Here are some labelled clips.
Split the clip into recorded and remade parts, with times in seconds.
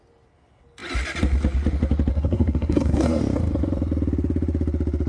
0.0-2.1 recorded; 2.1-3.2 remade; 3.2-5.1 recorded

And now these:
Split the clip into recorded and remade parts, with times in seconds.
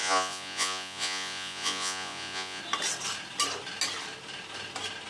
0.0-2.6 remade; 2.6-5.1 recorded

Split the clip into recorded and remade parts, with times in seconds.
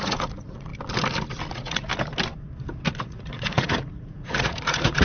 0.0-0.7 remade; 0.7-1.5 recorded; 1.5-1.9 remade; 1.9-3.0 recorded; 3.0-5.0 remade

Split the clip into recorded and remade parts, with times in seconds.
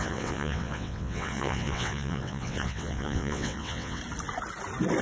0.0-4.0 remade; 4.0-5.0 recorded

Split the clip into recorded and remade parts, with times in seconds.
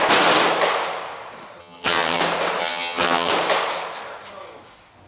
0.0-1.6 recorded; 1.6-2.2 remade; 2.2-2.6 recorded; 2.6-3.3 remade; 3.3-5.1 recorded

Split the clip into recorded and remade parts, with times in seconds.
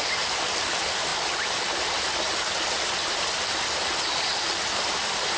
0.0-5.4 recorded